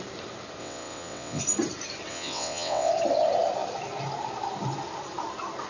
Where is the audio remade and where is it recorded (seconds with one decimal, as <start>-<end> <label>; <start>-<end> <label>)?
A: 0.0-0.6 recorded; 0.6-1.4 remade; 1.4-2.1 recorded; 2.1-2.9 remade; 2.9-5.7 recorded